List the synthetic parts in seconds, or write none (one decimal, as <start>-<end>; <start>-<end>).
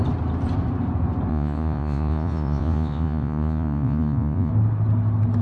1.3-4.5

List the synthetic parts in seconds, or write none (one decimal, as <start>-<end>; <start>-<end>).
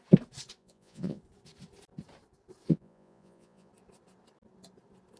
0.6-1.2; 2.7-3.7